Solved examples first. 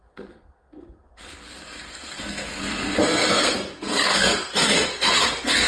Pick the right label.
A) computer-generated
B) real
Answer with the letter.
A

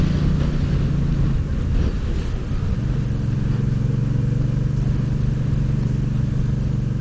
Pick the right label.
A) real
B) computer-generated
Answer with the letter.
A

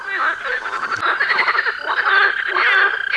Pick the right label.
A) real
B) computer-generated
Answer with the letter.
A